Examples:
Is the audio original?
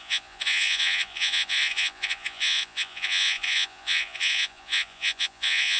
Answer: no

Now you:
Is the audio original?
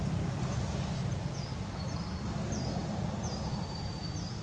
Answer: yes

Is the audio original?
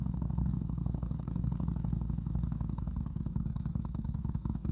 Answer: no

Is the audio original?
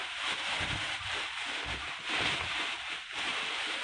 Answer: no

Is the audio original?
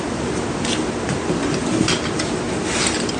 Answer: yes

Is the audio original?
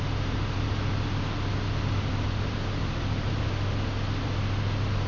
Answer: yes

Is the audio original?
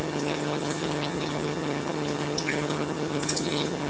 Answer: no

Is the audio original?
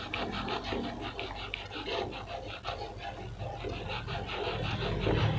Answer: yes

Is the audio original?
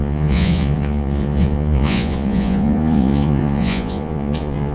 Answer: no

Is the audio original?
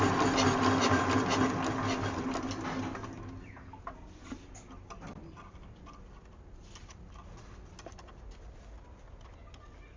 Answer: yes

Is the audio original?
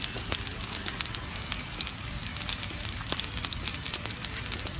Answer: yes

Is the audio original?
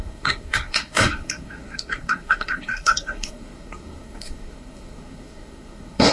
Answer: no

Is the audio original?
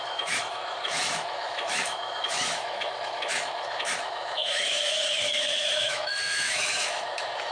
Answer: no